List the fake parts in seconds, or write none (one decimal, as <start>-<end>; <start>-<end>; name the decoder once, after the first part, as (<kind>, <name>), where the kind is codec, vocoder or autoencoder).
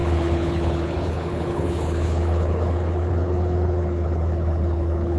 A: 0.0-5.2 (codec, HILCodec)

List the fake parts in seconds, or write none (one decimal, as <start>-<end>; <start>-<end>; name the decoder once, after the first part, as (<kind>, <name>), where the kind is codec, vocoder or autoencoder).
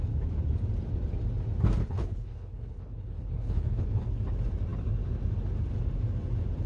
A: 1.8-4.2 (codec, HILCodec)